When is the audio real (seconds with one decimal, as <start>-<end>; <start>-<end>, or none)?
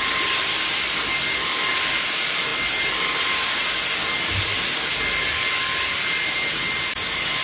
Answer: 0.0-7.4